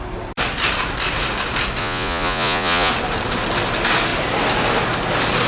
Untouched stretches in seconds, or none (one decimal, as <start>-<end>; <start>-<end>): 0.0-1.8; 2.9-5.5